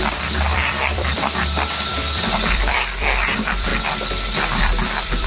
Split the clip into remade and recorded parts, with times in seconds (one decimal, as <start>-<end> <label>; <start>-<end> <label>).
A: 0.0-3.7 remade; 3.7-4.6 recorded; 4.6-5.3 remade